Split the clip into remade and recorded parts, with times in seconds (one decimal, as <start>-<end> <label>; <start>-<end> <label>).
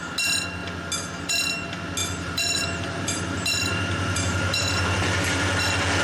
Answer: 0.0-2.0 recorded; 2.0-5.6 remade; 5.6-6.0 recorded